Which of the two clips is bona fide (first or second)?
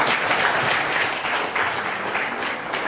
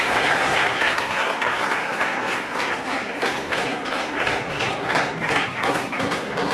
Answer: first